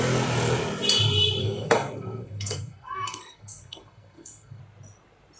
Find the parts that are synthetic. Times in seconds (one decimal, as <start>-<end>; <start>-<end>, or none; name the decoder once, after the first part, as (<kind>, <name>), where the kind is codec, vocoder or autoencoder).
1.4-4.6 (codec, SNAC)